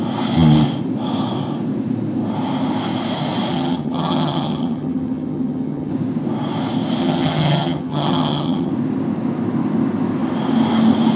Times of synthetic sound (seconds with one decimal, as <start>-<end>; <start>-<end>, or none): 3.5-5.9; 7.0-8.7